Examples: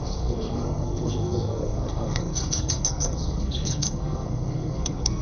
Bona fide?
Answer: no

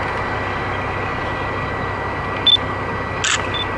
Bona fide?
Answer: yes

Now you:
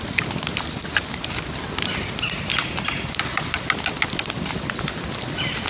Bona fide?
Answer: yes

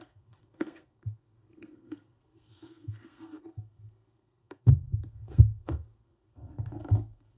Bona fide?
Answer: no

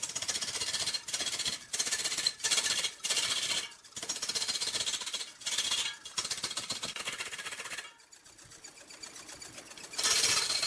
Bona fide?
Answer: yes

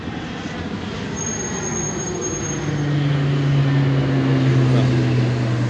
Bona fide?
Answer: yes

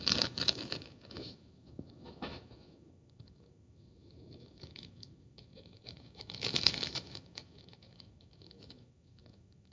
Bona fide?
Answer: no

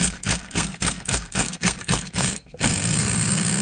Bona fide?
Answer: no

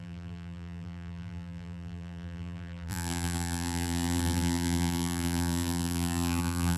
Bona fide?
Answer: no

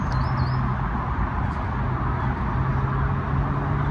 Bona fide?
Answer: yes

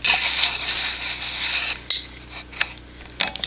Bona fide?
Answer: yes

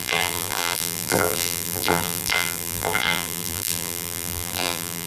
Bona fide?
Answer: no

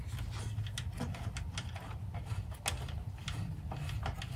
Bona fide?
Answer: yes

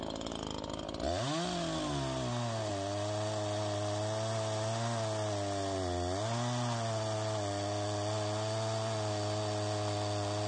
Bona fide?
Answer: yes